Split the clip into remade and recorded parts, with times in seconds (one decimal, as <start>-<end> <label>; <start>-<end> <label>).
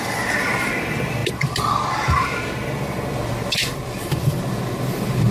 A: 0.0-5.3 recorded